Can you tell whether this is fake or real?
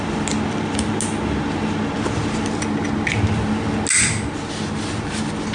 real